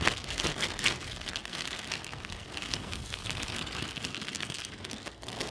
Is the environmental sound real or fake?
fake